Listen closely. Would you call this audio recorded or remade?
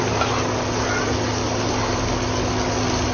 remade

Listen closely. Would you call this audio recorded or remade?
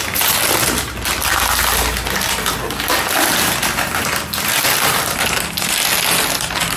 recorded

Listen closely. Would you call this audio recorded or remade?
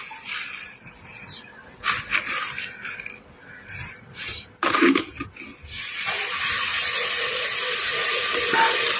recorded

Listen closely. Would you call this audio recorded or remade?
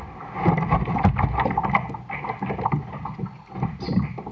recorded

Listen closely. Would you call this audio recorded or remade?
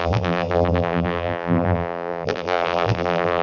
remade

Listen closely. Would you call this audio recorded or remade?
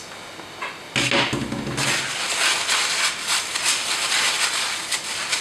recorded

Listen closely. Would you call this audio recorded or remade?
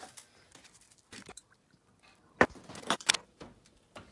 remade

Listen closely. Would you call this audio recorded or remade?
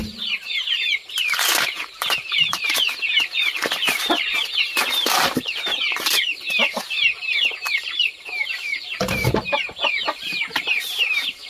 remade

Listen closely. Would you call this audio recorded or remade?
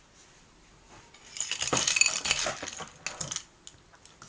recorded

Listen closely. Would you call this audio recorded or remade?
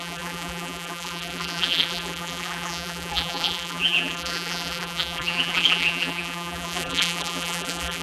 remade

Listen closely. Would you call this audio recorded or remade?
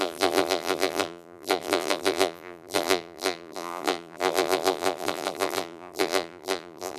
remade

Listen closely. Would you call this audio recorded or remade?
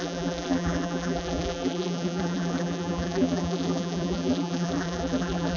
remade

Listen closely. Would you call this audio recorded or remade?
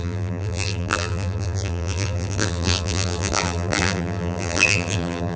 remade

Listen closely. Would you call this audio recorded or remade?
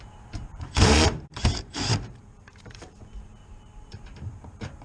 remade